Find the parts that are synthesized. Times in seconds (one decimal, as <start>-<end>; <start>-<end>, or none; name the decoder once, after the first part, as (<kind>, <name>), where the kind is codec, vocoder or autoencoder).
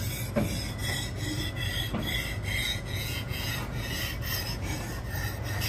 2.6-3.5 (vocoder, Vocos)